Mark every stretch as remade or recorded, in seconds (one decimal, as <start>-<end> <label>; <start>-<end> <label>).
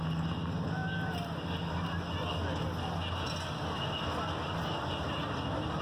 0.0-5.8 recorded